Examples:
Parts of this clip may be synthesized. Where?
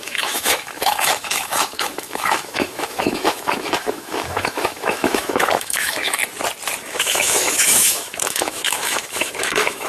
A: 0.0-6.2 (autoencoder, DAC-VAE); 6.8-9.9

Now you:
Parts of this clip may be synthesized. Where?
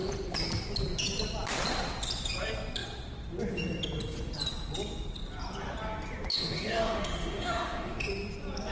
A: 6.3-8.1 (autoencoder, DAC-VAE)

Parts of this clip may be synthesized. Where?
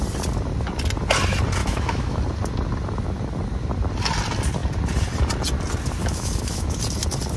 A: 1.6-2.2 (autoencoder, DAC-VAE); 6.0-6.8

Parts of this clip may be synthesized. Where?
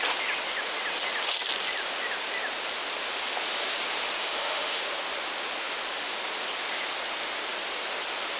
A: 4.2-4.8 (autoencoder, DAC-VAE)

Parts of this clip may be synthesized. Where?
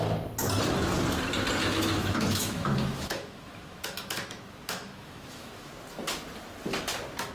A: 1.6-5.7 (autoencoder, DAC-VAE)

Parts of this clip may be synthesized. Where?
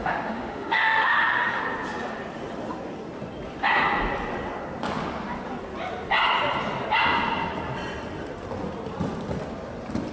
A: 0.0-1.6 (autoencoder, DAC-VAE)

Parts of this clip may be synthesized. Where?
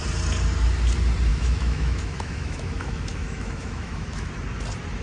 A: 1.3-4.3 (autoencoder, DAC-VAE)